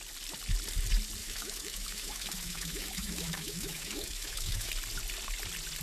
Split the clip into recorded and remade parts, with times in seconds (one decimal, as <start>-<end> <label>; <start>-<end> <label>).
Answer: 0.0-1.2 recorded; 1.2-4.7 remade; 4.7-5.8 recorded